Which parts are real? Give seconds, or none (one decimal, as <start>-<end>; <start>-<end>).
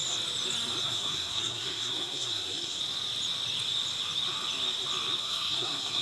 0.0-0.8; 2.8-5.2